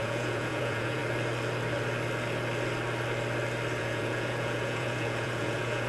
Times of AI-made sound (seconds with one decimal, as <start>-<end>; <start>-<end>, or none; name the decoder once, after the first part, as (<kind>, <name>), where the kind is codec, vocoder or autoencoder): 0.0-1.0 (vocoder, Vocos); 3.8-5.9